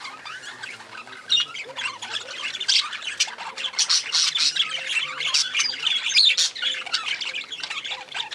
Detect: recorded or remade recorded